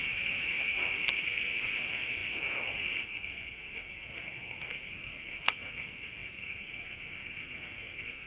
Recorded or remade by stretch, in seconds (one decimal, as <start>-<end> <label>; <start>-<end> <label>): 0.0-8.3 remade

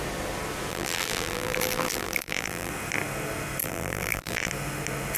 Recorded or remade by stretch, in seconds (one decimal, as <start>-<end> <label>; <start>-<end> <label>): 0.0-0.7 recorded; 0.7-2.7 remade; 2.7-3.6 recorded; 3.6-4.5 remade; 4.5-5.2 recorded

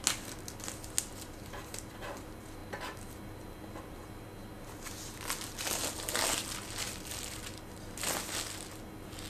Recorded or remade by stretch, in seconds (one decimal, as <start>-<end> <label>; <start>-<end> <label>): 0.0-9.3 recorded

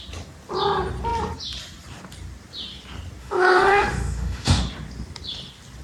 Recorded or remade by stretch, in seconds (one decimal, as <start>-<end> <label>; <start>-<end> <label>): 0.0-3.2 recorded; 3.2-4.6 remade; 4.6-5.8 recorded

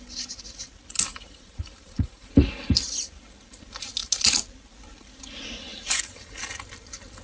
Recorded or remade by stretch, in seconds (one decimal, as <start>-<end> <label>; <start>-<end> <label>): 0.0-1.1 recorded; 1.1-2.3 remade; 2.3-7.2 recorded